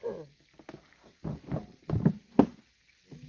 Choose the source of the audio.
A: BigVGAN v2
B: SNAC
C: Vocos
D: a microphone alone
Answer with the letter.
D